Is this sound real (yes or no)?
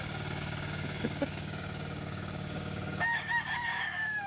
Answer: no